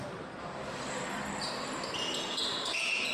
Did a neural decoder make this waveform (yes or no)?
yes